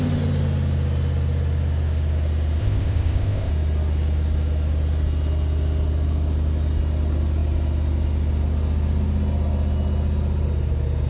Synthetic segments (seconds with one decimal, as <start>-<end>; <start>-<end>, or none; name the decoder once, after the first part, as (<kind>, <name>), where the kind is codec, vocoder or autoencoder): 2.6-3.5 (codec, ZipCodec)